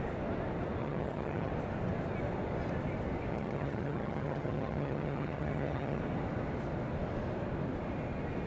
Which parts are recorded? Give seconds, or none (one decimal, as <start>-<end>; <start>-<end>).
0.0-0.8; 1.5-3.3; 6.0-8.5